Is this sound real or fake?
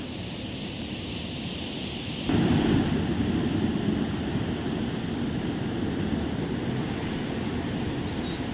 real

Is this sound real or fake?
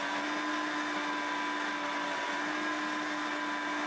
real